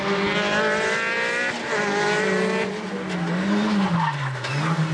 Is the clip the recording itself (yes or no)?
yes